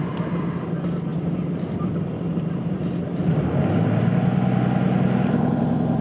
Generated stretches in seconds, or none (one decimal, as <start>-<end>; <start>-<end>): 1.1-3.7

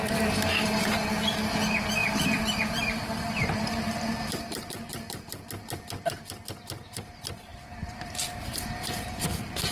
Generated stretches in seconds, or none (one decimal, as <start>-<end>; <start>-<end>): 2.0-4.7

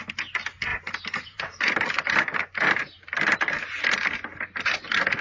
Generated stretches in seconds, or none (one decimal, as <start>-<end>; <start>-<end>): 0.7-3.8

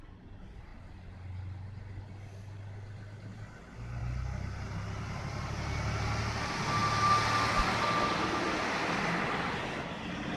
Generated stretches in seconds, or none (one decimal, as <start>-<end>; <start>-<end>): none

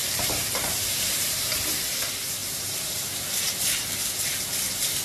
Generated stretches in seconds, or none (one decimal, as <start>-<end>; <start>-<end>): 0.0-1.8; 2.4-3.5

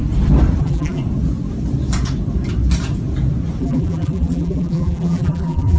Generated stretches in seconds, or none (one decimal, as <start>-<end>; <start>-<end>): 0.6-1.0; 3.6-5.8